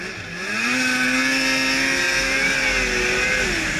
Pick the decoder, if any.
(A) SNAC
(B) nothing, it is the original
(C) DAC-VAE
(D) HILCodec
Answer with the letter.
B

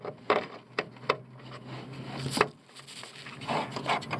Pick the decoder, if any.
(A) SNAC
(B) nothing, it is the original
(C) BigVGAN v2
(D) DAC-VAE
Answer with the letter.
B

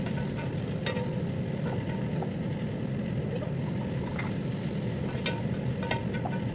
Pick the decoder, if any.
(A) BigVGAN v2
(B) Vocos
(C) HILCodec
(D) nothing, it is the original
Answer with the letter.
D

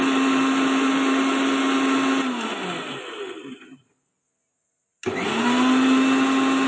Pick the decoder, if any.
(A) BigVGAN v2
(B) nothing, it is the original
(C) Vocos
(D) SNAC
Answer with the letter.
B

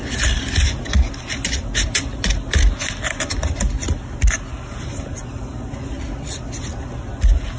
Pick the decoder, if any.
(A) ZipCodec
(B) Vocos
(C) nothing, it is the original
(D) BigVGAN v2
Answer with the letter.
C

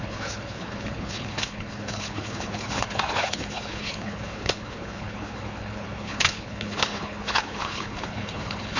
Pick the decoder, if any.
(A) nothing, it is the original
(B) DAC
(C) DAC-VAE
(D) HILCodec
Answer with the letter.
D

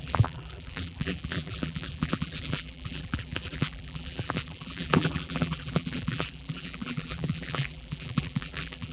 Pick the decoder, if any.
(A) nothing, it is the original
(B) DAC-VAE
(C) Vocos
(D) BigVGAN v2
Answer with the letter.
D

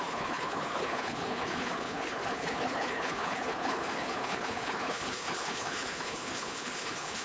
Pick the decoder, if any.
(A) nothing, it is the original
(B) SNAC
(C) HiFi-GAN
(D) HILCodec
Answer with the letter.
D